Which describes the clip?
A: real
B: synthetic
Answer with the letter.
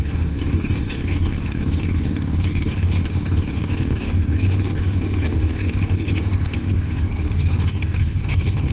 B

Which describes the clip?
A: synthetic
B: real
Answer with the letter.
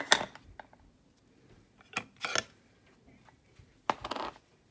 B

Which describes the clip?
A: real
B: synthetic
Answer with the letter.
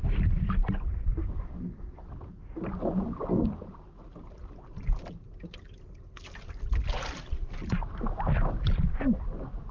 A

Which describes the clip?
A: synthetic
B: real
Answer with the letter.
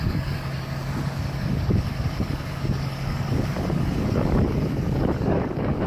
A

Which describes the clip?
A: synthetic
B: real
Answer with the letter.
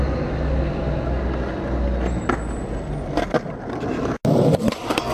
B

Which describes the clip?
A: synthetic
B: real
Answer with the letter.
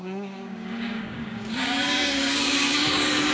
A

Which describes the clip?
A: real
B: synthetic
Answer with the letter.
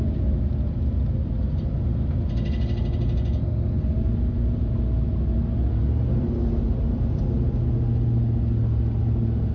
A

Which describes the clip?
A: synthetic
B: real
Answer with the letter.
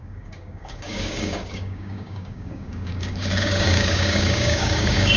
A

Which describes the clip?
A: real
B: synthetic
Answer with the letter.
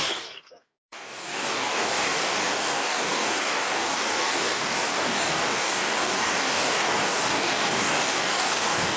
B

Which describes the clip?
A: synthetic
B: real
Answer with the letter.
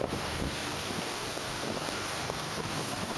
A